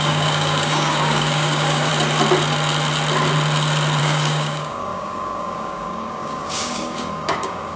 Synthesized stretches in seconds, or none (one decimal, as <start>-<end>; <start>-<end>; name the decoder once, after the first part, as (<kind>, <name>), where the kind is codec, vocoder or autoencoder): 0.0-1.9 (codec, DAC); 4.0-7.8